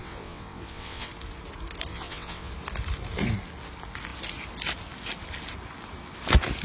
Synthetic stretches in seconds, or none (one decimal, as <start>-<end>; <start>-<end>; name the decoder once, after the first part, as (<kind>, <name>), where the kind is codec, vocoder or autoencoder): 0.0-1.1 (vocoder, WaveNeXt); 1.9-2.5